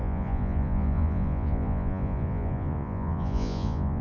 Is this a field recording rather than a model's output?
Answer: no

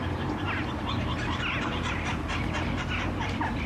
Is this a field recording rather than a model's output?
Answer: yes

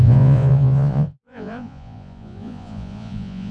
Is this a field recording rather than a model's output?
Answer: no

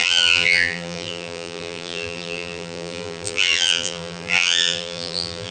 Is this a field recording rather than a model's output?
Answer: no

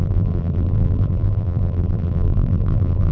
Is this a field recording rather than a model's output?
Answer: no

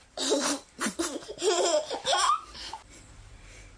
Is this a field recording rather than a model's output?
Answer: no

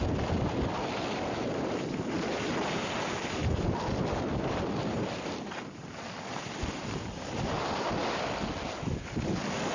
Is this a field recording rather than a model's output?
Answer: yes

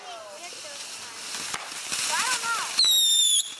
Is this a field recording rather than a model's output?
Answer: yes